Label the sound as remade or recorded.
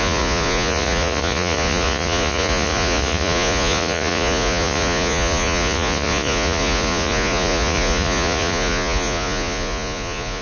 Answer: remade